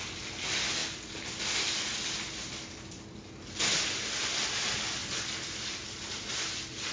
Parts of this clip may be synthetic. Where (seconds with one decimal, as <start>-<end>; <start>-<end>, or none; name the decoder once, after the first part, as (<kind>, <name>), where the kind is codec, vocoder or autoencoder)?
none